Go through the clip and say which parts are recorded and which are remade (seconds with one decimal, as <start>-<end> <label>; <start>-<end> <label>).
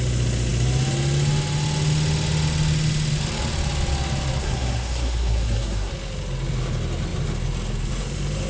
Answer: 0.0-4.4 recorded; 4.4-5.9 remade; 5.9-8.5 recorded